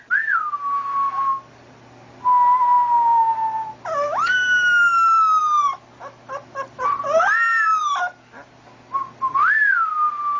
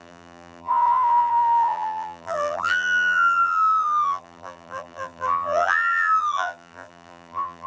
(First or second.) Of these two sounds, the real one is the first